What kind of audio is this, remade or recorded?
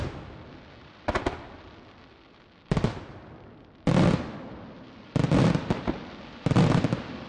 recorded